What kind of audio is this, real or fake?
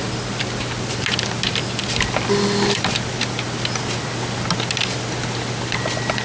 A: real